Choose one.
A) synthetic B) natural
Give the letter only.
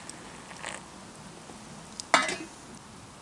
B